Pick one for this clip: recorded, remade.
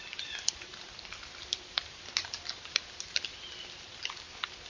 remade